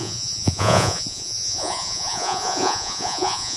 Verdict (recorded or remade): remade